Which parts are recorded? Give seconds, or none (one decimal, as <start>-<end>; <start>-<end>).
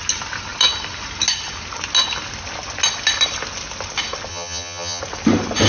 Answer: 0.0-4.3; 5.0-5.7